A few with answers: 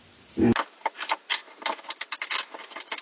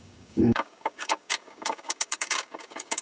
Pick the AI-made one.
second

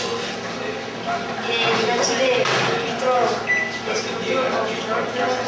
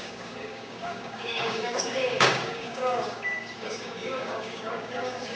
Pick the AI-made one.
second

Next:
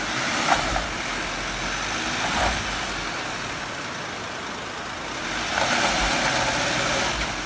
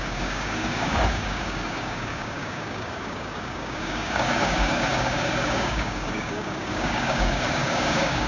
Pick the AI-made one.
second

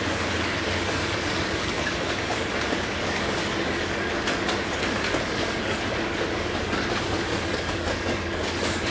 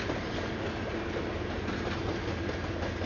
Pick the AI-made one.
first